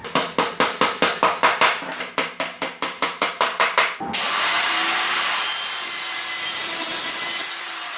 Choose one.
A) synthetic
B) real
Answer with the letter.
A